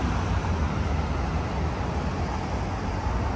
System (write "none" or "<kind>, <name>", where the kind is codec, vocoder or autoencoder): none